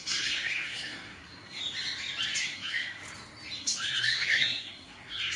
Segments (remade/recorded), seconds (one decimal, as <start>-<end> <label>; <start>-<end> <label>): 0.0-1.6 remade; 1.6-2.4 recorded; 2.4-3.0 remade; 3.0-3.6 recorded; 3.6-5.4 remade